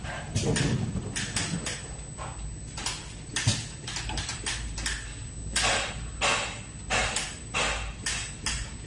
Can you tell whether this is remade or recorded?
recorded